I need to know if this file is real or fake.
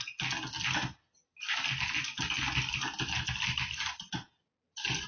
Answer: real